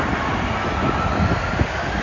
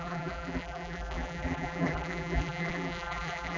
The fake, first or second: second